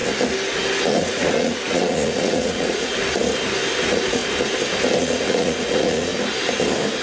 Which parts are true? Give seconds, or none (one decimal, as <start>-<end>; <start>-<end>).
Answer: 0.0-1.0; 3.0-3.8; 4.2-5.0; 6.1-7.0